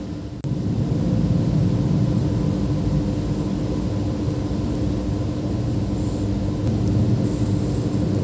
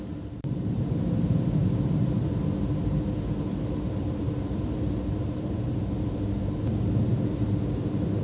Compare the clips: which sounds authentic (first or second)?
first